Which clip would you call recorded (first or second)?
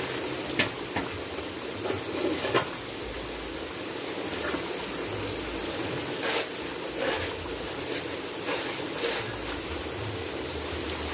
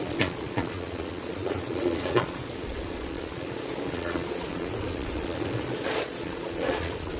first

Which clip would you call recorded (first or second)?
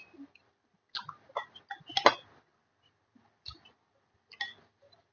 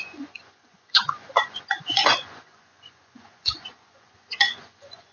first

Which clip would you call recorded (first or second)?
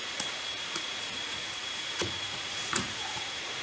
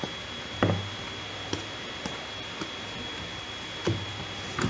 second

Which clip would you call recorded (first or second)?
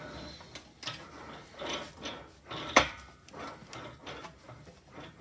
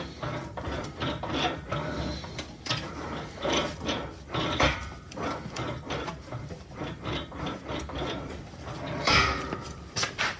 first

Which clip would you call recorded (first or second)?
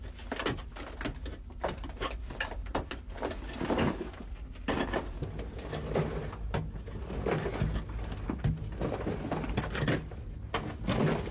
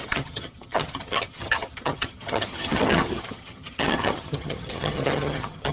first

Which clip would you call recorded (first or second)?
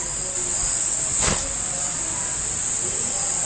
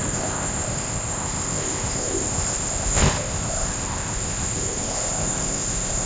first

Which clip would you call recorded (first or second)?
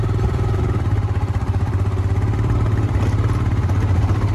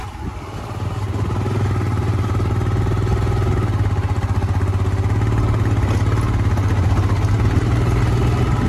second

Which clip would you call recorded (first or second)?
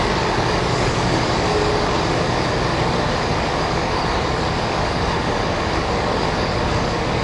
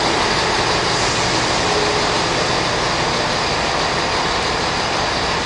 second